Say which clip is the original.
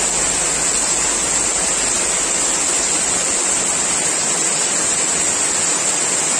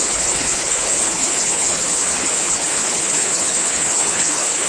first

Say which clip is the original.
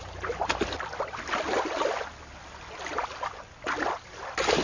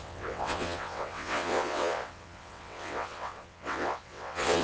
first